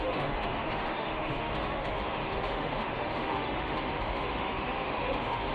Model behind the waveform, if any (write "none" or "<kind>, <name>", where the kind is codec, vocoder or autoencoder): autoencoder, DAC-VAE